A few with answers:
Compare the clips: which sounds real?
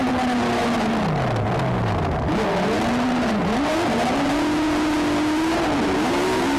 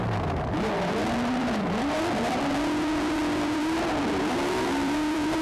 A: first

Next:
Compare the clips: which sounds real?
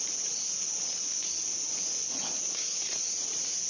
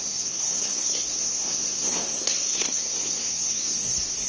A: first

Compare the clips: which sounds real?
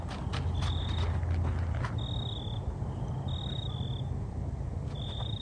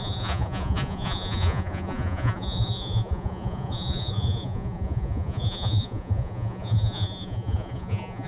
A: first